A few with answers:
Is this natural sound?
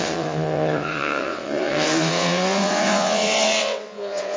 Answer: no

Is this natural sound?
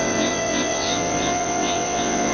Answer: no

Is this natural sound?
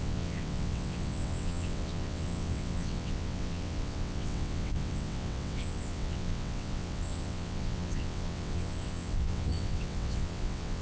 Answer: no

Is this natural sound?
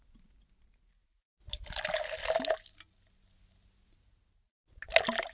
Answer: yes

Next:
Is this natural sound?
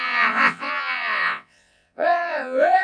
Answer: no